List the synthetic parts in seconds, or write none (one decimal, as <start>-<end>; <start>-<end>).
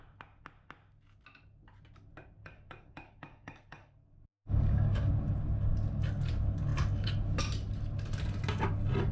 2.4-5.1